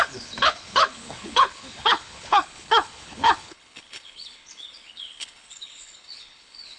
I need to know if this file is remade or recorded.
remade